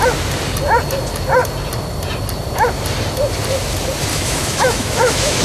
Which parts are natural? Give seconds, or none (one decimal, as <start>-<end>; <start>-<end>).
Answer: 0.0-4.1